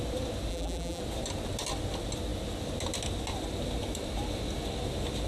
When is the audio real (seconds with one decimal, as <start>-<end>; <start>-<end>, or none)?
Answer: 0.0-0.5; 1.0-5.3